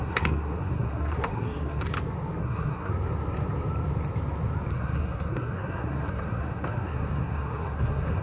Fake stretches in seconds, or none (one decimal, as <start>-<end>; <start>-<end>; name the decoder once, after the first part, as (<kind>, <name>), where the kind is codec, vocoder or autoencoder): 0.0-1.9 (codec, SNAC); 2.4-2.9; 4.7-8.2